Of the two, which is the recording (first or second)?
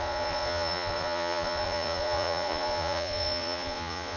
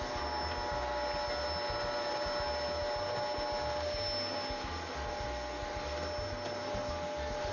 second